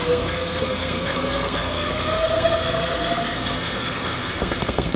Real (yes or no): no